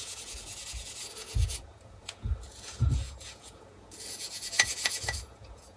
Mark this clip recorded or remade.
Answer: remade